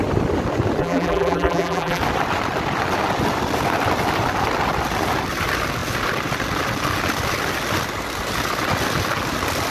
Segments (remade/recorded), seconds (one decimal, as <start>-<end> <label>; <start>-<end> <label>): 0.0-0.8 recorded; 0.8-2.0 remade; 2.0-9.7 recorded